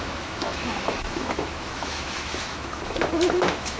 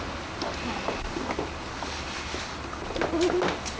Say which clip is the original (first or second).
second